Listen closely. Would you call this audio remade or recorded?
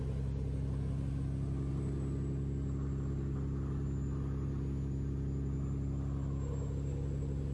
recorded